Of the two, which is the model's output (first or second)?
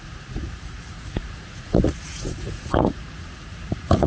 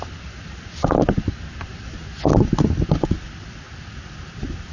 first